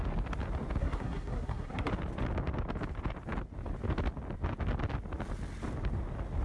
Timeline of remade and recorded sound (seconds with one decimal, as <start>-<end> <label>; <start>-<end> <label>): 0.0-0.8 recorded; 0.8-1.9 remade; 1.9-6.4 recorded